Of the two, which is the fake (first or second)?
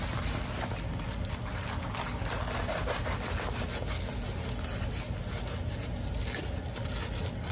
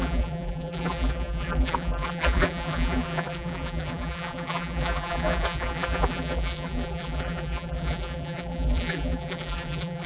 second